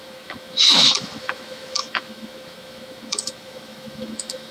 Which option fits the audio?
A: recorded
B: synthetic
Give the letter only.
B